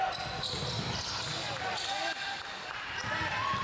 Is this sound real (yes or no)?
yes